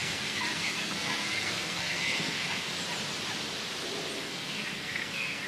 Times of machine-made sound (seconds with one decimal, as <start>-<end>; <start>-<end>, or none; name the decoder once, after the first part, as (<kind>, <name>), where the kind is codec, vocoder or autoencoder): 0.0-2.7 (codec, SNAC); 4.2-5.5